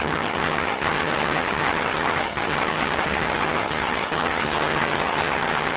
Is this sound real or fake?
fake